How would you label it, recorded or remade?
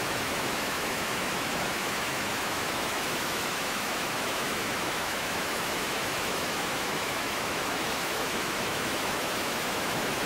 remade